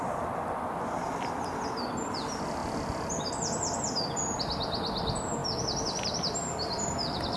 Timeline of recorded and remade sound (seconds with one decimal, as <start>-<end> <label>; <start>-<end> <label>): 0.0-7.4 recorded